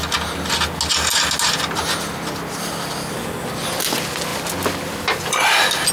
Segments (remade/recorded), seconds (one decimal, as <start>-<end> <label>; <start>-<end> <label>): 0.0-5.9 recorded